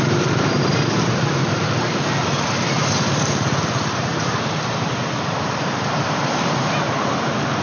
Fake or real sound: fake